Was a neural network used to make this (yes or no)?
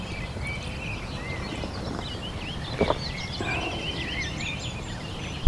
yes